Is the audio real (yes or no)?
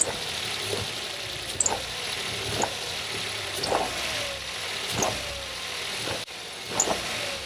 yes